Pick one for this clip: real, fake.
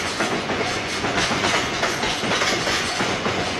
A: fake